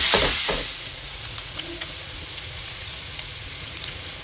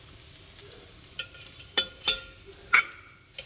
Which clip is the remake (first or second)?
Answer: first